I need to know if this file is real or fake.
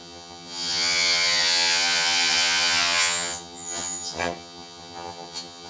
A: fake